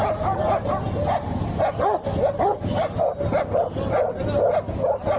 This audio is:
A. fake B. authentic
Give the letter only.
B